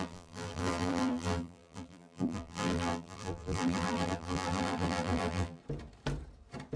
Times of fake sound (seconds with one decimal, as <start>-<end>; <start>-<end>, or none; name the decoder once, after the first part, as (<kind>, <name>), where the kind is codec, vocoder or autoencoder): 0.0-5.6 (vocoder, BigVGAN v2)